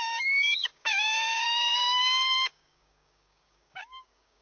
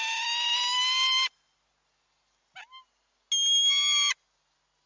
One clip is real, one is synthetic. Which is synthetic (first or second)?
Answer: first